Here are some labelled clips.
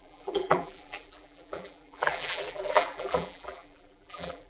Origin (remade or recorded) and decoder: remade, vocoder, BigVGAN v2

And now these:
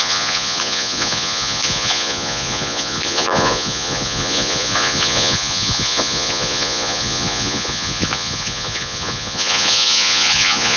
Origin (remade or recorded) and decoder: remade, vocoder, Vocos